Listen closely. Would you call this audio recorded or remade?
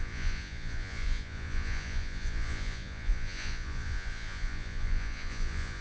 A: remade